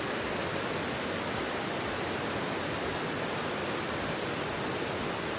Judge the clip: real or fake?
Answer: real